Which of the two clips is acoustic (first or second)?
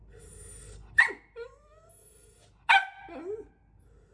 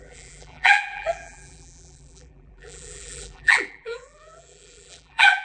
first